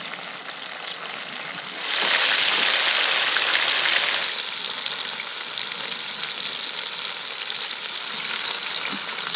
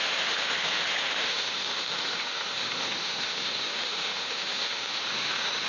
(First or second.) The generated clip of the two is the second